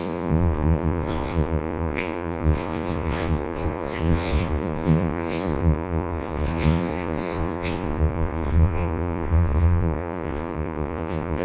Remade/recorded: remade